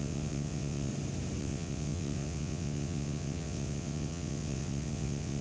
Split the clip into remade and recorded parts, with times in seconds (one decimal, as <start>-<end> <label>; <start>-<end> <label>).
0.0-0.9 remade; 0.9-1.4 recorded; 1.4-5.4 remade